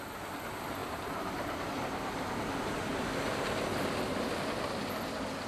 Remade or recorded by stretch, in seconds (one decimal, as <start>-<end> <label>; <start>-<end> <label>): 0.0-0.8 recorded; 0.8-2.8 remade; 2.8-5.5 recorded